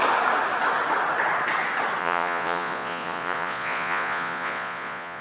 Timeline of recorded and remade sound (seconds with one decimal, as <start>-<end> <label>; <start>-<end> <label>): 0.0-2.0 recorded; 2.0-5.2 remade